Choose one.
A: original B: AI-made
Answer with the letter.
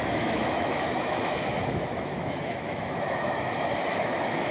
B